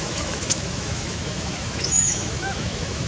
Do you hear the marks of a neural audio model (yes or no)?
yes